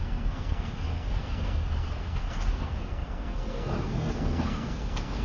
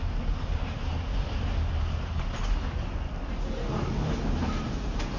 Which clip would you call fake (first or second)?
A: first